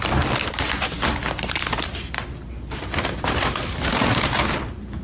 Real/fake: real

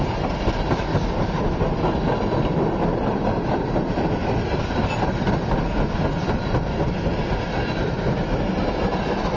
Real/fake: real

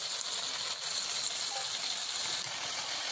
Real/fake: real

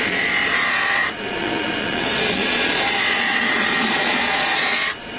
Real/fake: fake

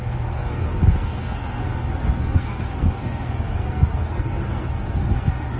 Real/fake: fake